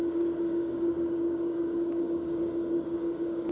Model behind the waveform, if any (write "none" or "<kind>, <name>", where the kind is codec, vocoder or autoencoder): codec, DAC